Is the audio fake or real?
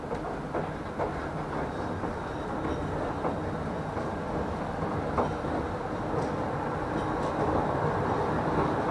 real